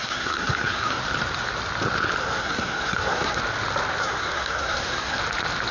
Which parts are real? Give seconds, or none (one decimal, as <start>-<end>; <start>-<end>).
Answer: 1.0-2.2; 3.4-4.0; 5.2-5.7